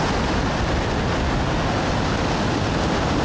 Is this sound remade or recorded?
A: recorded